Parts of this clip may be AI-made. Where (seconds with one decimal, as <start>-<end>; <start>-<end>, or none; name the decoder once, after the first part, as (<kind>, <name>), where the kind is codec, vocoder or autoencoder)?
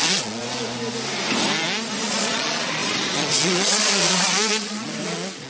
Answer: 0.0-0.4 (vocoder, Vocos); 2.0-5.5